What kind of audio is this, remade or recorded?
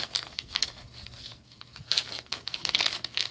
remade